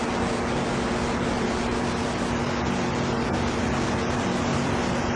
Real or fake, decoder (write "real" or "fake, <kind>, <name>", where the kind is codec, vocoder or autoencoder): real